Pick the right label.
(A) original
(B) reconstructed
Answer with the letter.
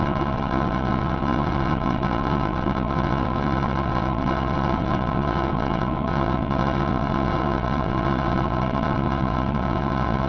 B